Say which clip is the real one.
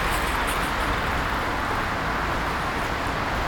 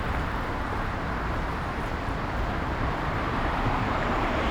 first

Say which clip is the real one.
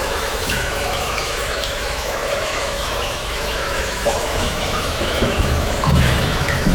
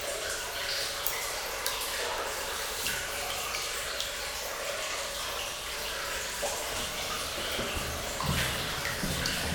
second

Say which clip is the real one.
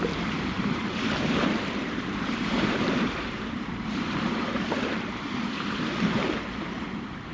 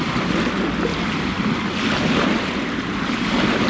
second